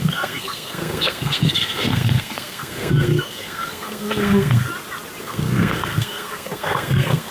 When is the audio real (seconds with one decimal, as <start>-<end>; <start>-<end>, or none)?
4.7-5.2